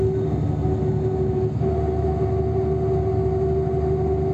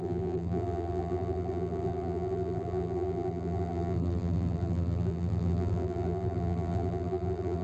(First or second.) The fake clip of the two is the second